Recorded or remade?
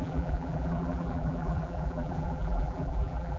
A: remade